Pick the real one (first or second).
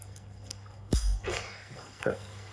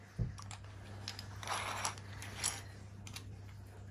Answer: second